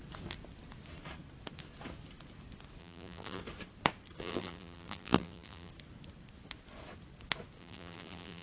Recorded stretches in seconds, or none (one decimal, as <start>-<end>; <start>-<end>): 0.0-2.8; 3.4-4.2; 5.7-7.6

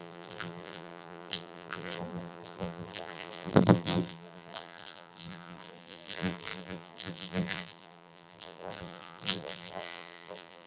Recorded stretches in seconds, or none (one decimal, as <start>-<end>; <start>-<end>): none

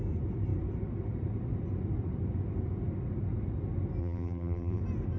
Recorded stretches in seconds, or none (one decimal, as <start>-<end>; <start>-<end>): 0.0-4.0; 4.8-5.2

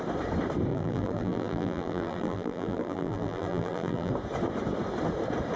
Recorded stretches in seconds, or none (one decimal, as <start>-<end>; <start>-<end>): 0.0-0.7; 4.1-5.6

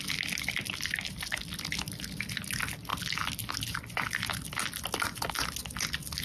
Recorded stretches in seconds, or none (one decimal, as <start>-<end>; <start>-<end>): 0.0-6.2